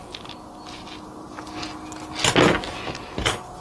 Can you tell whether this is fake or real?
real